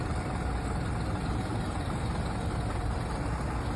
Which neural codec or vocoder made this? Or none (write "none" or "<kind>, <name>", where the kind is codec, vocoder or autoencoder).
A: none